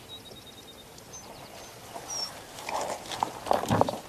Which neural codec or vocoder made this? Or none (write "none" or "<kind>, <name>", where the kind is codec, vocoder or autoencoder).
none